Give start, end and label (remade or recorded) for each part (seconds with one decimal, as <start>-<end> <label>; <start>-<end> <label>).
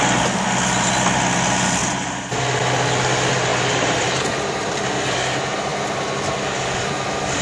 0.0-1.8 recorded; 1.8-2.4 remade; 2.4-3.5 recorded; 3.5-4.7 remade; 4.7-7.4 recorded